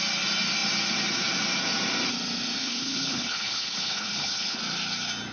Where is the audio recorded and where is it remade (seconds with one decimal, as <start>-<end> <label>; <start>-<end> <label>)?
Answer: 0.0-2.6 recorded; 2.6-4.6 remade; 4.6-5.3 recorded